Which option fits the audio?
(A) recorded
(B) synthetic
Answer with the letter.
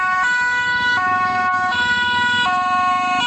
B